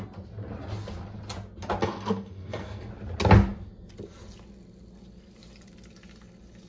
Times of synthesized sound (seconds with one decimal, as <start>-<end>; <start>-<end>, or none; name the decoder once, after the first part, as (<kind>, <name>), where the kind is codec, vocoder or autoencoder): 1.8-2.9 (codec, SNAC)